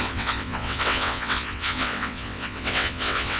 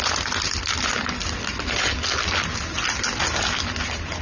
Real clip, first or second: second